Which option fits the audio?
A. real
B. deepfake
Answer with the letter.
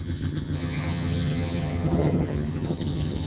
B